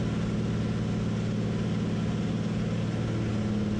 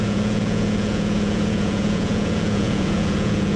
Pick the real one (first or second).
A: first